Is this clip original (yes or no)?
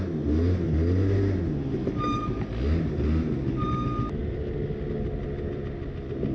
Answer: yes